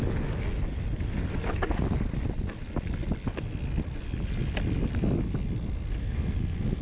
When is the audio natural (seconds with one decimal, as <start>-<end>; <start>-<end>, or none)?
0.0-6.0